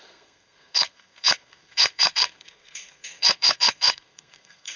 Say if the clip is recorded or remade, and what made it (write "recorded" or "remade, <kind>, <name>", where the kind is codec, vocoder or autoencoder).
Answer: remade, codec, SNAC